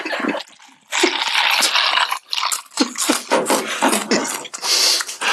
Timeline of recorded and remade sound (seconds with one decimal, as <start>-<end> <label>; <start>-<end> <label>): 0.0-5.3 recorded